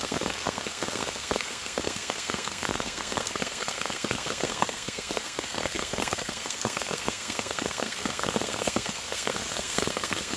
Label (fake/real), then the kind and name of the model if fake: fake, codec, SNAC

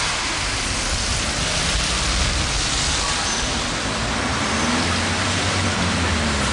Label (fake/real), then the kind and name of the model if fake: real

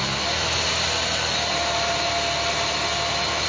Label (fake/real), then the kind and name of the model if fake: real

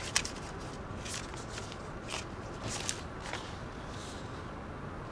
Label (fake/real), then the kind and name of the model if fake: real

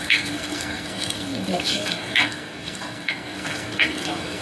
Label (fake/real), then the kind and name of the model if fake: fake, codec, SNAC